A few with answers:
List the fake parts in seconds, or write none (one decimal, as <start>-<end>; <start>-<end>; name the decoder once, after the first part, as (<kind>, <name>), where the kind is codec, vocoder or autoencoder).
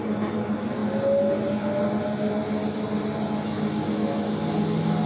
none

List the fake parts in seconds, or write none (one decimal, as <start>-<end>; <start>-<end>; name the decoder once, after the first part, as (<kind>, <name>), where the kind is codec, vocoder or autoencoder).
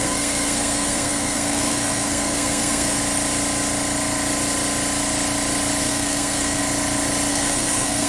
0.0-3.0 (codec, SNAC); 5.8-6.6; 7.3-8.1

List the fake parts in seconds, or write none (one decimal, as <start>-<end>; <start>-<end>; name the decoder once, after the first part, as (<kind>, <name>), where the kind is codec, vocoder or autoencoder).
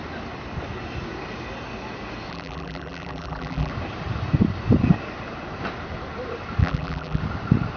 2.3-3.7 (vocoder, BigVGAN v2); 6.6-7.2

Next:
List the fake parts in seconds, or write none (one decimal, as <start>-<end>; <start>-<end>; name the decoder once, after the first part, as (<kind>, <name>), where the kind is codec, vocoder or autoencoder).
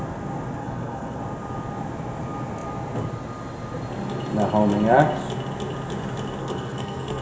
0.6-1.2 (codec, SNAC); 6.4-7.2